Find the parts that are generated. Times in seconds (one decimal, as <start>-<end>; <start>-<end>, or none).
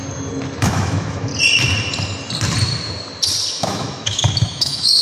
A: 0.6-1.3; 3.5-5.0